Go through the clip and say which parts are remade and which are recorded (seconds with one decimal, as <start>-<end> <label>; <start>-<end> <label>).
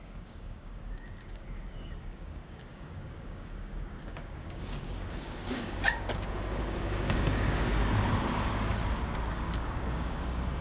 0.0-7.7 remade; 7.7-8.2 recorded; 8.2-8.8 remade; 8.8-9.3 recorded; 9.3-10.6 remade